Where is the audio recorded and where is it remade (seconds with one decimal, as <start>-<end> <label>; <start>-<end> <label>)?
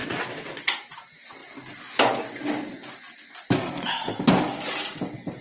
0.0-0.7 remade; 0.7-5.4 recorded